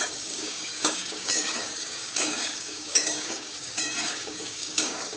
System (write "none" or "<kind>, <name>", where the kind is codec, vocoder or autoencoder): codec, DAC